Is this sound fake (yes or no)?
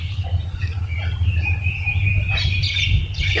no